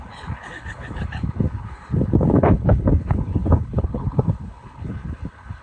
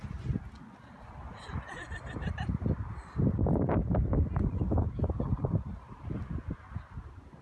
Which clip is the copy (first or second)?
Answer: first